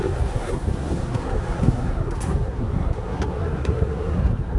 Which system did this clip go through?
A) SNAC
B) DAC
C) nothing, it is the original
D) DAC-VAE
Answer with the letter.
A